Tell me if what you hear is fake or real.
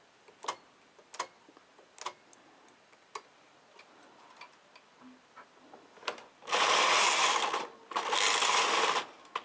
real